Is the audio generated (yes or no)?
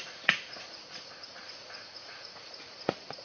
yes